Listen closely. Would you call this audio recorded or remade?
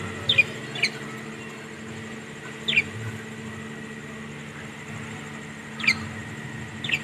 recorded